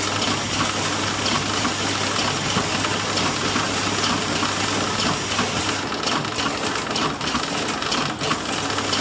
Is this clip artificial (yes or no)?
no